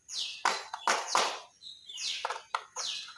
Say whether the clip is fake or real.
real